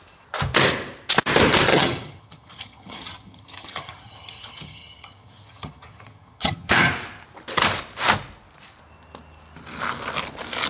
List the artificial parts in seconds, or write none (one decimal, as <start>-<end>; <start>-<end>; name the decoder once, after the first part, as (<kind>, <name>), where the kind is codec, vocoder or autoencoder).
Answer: 1.7-6.9 (vocoder, HiFi-GAN)